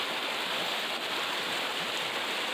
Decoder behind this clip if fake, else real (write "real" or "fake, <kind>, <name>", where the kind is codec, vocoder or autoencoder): real